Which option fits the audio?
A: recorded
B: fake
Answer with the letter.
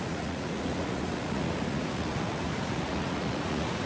B